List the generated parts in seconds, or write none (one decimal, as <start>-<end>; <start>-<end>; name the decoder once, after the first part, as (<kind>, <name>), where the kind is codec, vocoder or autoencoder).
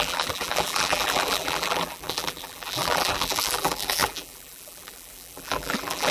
0.0-6.1 (vocoder, BigVGAN v2)